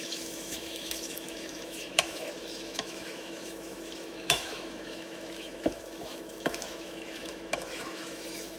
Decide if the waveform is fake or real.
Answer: fake